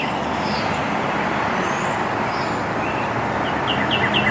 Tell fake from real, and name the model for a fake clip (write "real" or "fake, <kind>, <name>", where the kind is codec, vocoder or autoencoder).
real